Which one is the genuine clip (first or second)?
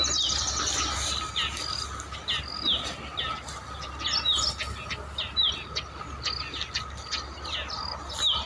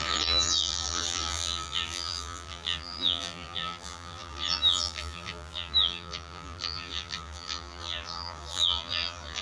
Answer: first